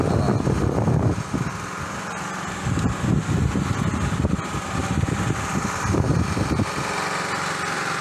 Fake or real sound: real